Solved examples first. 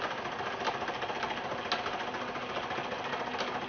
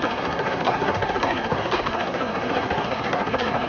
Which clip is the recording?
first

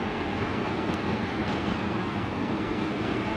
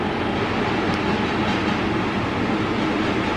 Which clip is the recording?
second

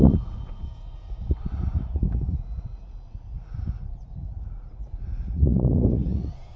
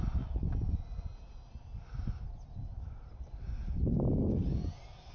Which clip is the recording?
second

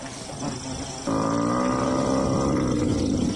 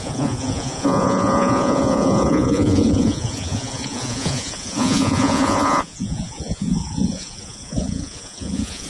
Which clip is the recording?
first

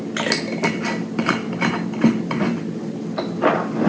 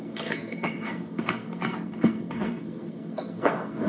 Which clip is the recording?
first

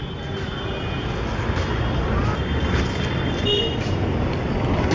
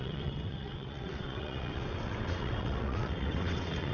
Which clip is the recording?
first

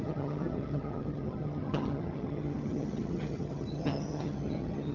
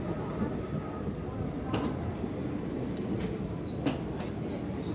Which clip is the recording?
second